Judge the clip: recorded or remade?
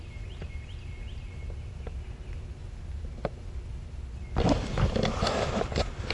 recorded